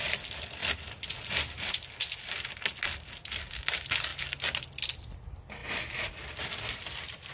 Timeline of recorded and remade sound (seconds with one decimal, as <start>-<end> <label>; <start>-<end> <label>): 0.0-7.3 recorded